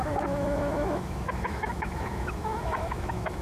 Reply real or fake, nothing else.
fake